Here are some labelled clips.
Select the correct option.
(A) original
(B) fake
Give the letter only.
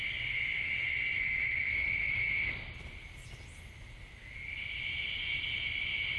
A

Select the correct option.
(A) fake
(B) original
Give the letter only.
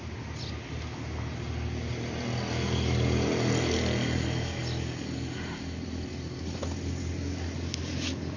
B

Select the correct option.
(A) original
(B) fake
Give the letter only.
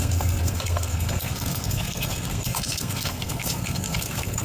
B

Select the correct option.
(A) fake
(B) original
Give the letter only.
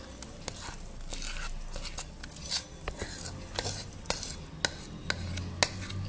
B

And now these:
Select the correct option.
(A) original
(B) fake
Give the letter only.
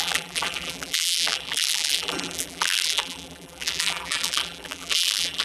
B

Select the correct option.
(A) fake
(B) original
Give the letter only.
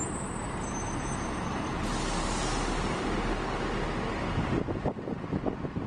B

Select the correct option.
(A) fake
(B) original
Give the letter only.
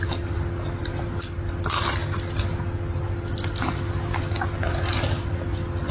B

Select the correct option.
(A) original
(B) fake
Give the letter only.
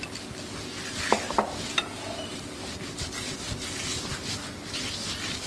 A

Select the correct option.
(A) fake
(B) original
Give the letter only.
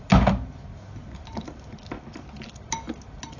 B